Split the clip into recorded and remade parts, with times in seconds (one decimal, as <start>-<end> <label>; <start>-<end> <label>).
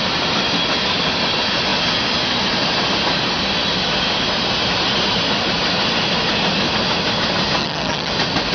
0.0-7.6 recorded; 7.6-8.1 remade; 8.1-8.5 recorded